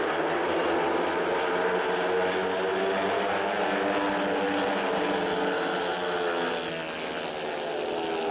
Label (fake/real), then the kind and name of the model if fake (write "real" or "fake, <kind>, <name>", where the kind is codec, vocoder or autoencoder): real